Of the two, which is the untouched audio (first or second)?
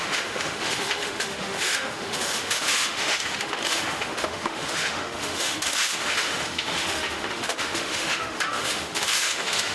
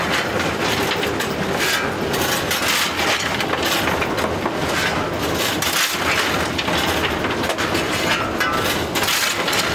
second